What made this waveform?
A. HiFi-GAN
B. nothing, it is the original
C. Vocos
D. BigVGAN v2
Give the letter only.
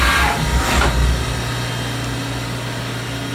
B